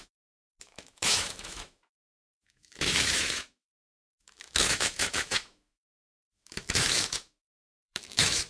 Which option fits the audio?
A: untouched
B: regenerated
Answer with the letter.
B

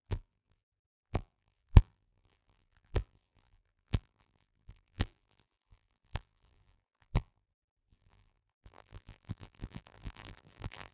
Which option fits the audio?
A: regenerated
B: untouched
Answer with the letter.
A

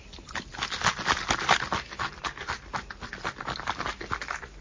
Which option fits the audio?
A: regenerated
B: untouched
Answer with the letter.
B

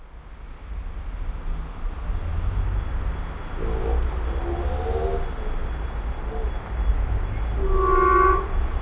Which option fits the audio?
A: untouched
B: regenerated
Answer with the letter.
A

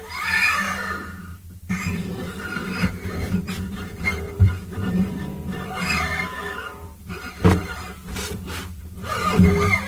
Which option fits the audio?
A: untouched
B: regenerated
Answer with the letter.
B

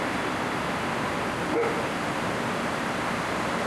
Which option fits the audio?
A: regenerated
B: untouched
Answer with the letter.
A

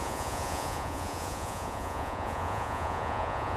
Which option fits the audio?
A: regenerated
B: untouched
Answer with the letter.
A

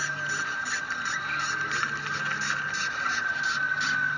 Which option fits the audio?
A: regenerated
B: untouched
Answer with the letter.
B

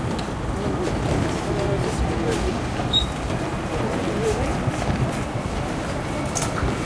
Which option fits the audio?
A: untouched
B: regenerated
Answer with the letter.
A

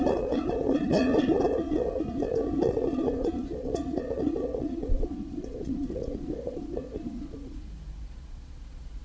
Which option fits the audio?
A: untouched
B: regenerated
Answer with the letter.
B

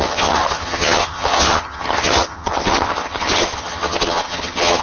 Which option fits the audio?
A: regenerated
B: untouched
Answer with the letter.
A